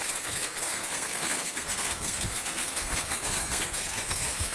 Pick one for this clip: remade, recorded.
remade